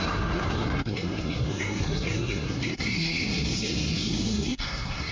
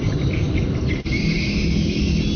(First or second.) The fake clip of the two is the first